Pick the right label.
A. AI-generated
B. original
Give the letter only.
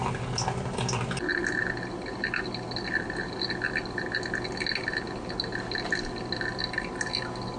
B